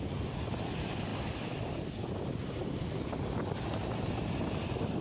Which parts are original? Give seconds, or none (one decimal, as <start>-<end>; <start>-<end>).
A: 0.0-5.0